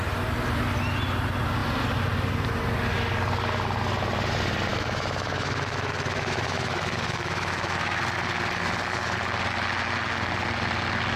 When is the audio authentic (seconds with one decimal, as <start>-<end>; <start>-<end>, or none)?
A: 0.0-4.7; 8.0-11.2